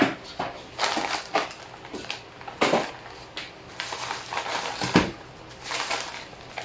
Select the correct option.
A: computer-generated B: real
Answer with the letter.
B